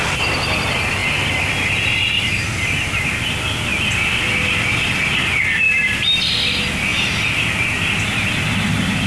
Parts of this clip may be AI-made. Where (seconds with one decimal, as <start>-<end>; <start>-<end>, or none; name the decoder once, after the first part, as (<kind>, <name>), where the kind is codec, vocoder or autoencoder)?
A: none